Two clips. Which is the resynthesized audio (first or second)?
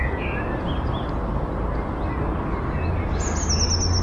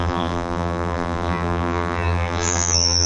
second